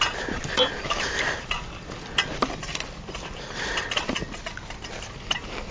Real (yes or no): yes